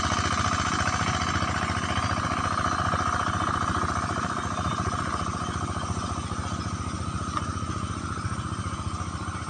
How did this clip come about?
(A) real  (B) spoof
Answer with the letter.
A